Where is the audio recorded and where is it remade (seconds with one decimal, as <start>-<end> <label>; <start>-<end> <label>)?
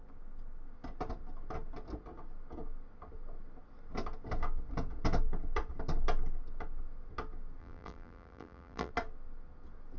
0.0-7.6 recorded; 7.6-8.9 remade; 8.9-10.0 recorded